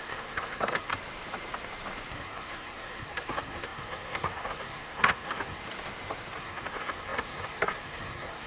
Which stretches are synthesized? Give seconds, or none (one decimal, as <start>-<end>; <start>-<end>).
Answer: 0.0-0.9; 2.1-5.6; 6.4-8.5